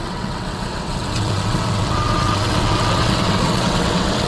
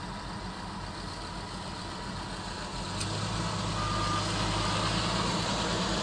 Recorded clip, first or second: second